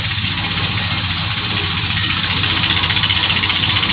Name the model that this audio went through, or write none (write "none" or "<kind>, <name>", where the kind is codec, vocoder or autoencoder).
none